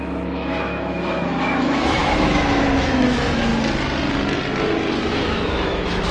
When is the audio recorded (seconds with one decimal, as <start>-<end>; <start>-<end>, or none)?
3.5-5.1